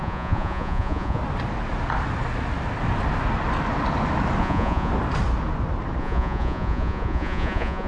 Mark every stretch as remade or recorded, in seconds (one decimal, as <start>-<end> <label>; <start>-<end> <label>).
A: 0.0-1.2 remade; 1.2-4.4 recorded; 4.4-4.9 remade; 4.9-6.0 recorded; 6.0-7.9 remade